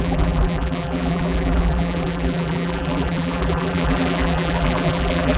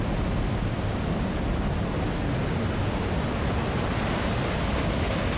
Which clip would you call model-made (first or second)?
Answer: first